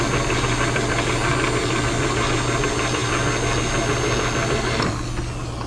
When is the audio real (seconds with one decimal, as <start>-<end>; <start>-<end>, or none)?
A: 0.0-5.7